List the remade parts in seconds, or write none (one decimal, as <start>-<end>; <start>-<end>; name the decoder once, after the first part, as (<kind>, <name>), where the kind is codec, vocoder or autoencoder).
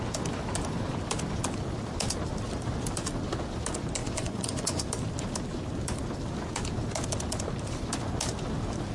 4.0-4.8 (vocoder, Vocos)